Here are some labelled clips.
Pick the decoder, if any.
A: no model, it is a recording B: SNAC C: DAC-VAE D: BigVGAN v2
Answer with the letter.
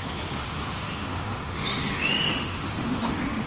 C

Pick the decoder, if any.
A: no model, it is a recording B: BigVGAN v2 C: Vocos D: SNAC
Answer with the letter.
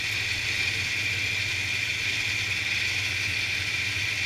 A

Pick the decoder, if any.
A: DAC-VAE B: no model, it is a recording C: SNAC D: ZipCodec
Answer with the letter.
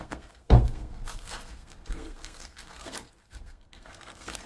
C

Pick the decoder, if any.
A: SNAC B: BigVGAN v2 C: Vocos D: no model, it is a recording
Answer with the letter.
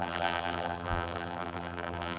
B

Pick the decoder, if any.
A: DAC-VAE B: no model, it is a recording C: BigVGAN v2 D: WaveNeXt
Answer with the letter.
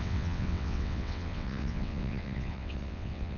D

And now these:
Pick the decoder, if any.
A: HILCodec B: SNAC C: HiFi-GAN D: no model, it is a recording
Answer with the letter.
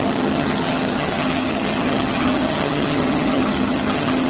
C